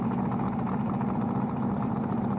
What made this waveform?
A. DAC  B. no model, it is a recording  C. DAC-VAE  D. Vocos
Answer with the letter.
B